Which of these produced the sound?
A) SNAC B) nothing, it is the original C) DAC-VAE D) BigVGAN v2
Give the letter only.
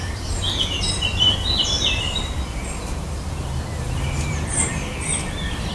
D